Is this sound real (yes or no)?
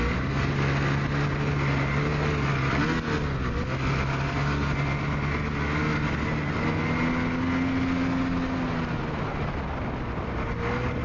yes